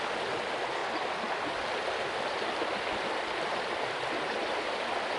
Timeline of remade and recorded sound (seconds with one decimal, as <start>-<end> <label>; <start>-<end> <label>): 0.0-5.2 recorded